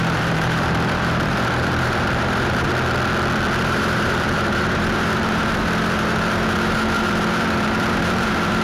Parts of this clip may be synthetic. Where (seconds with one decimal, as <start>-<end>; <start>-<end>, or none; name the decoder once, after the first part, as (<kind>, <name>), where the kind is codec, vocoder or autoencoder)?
0.0-2.7 (vocoder, BigVGAN v2); 3.6-8.6